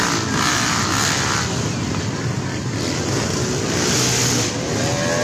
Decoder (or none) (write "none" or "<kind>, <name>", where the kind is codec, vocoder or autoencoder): none